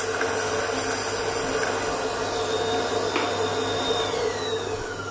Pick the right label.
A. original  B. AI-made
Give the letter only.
A